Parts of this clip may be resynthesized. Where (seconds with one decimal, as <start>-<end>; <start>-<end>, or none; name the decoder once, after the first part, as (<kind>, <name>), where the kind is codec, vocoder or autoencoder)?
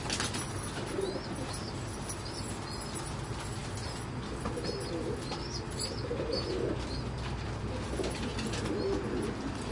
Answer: none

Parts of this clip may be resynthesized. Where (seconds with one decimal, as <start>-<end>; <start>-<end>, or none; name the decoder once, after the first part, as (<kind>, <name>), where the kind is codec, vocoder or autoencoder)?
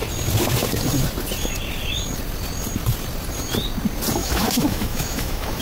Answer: 4.2-5.6 (autoencoder, DAC-VAE)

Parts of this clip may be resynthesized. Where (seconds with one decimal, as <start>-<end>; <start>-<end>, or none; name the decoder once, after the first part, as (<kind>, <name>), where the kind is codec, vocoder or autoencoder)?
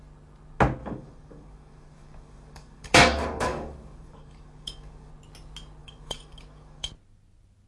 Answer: 0.8-5.1 (codec, DAC); 5.8-6.9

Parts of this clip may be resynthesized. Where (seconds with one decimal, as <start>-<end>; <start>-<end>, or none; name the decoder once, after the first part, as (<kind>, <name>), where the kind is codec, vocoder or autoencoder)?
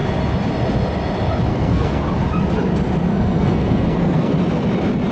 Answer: 1.5-2.0 (codec, SNAC); 3.1-4.3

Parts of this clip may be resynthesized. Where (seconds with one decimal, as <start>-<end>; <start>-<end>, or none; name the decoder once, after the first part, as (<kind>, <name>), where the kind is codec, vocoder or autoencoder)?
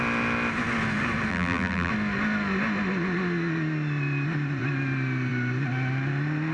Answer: 1.3-1.9 (vocoder, BigVGAN v2)